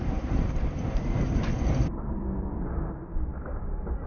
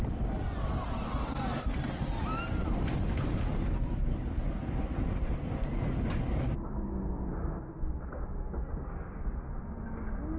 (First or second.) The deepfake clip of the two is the first